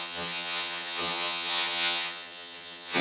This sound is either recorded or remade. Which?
remade